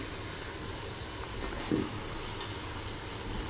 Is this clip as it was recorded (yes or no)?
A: yes